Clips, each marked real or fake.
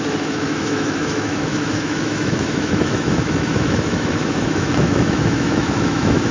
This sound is fake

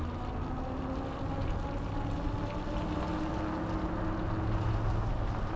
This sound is real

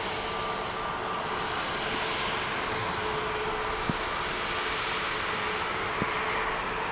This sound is real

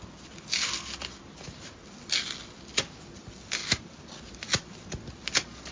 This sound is real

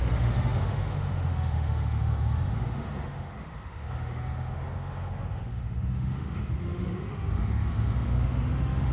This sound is fake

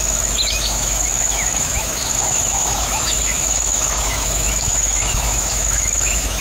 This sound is fake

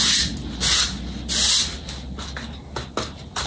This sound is real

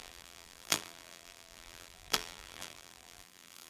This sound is fake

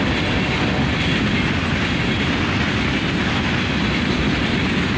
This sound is real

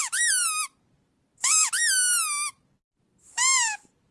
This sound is real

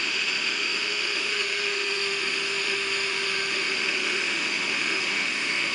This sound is fake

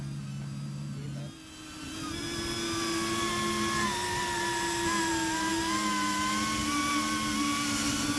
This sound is real